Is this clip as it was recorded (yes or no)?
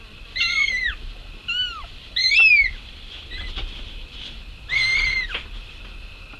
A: yes